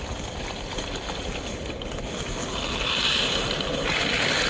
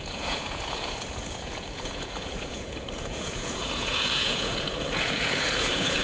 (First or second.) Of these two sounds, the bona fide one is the first